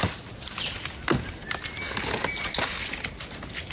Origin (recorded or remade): recorded